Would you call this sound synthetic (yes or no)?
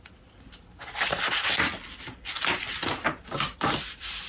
no